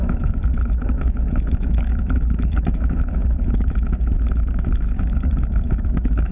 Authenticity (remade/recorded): remade